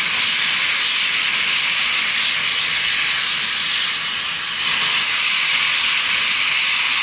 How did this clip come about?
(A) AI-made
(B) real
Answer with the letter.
B